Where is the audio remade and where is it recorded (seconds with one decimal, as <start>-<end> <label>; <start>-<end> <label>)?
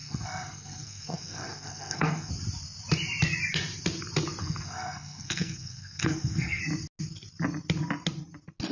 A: 0.0-2.3 remade; 2.3-4.4 recorded; 4.4-6.6 remade; 6.6-8.7 recorded